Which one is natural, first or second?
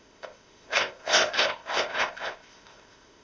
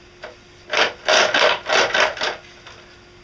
second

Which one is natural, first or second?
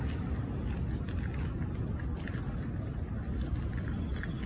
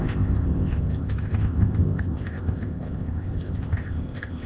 first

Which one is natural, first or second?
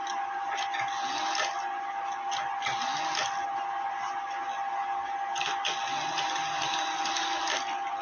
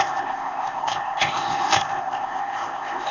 first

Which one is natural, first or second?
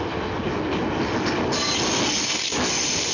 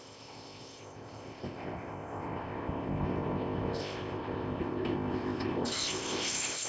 first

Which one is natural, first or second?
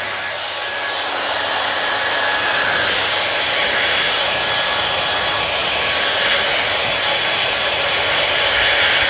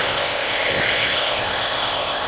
first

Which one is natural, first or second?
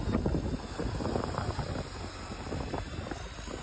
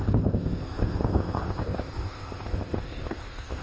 first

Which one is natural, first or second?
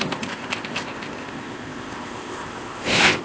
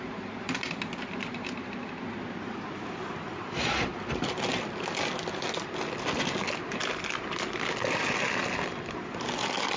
second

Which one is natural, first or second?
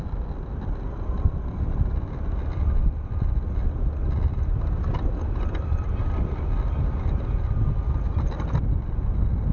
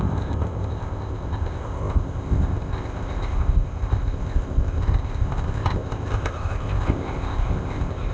first